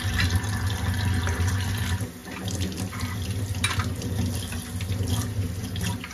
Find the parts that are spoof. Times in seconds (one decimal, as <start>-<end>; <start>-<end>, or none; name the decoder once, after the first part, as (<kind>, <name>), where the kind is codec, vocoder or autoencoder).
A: none